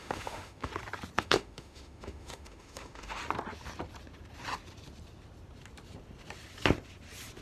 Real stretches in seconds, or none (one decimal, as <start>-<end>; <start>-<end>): 0.7-1.2; 3.2-7.4